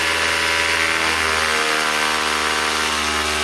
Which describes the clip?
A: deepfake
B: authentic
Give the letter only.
B